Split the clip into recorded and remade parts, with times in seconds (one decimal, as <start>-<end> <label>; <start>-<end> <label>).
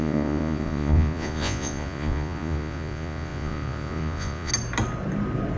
0.0-4.5 remade; 4.5-5.6 recorded